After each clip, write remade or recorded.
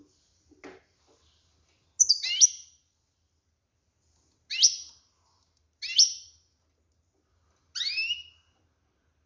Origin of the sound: recorded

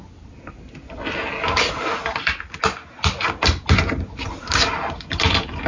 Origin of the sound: recorded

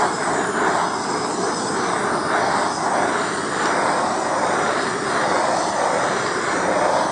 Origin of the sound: recorded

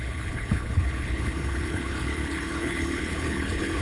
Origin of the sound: remade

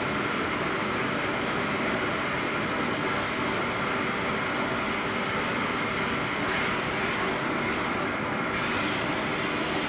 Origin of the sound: recorded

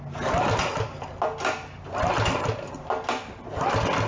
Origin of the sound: recorded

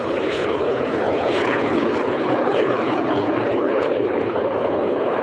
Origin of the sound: remade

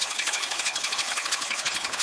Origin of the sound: remade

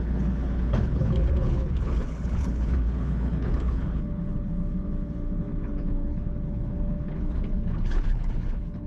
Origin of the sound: remade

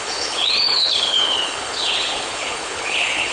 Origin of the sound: remade